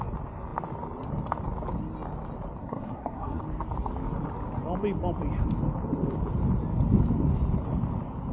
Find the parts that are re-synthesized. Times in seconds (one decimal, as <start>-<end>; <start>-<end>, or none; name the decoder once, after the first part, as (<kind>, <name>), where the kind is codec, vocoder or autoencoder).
2.6-3.4 (codec, SNAC)